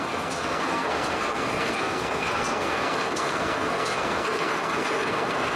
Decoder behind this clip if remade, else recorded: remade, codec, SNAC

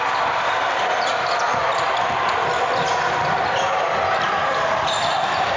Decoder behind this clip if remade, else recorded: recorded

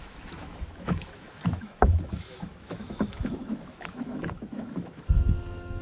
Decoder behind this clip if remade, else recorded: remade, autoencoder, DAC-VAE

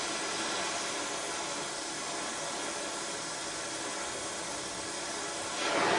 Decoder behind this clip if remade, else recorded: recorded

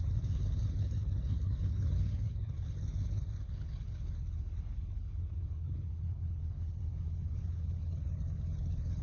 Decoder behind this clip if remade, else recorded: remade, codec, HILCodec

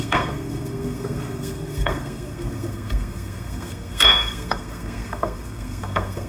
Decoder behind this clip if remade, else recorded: remade, codec, SNAC